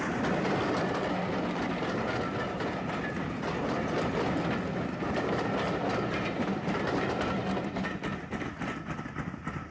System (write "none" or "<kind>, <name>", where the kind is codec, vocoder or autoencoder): none